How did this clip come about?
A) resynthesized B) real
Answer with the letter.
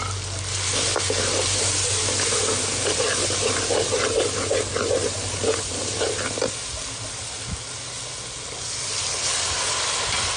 B